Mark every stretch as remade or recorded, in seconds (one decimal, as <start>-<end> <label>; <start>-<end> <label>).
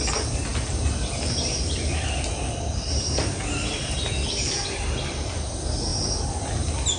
0.0-7.0 recorded